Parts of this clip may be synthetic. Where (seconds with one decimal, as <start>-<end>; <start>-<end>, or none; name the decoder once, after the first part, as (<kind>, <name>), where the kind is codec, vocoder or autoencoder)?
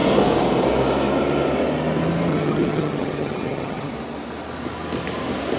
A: 2.3-3.9 (vocoder, HiFi-GAN)